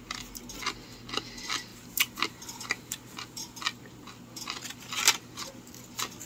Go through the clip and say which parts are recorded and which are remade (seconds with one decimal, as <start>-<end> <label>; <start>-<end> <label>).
0.0-6.3 recorded